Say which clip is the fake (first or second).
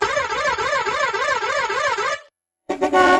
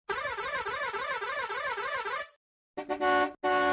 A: first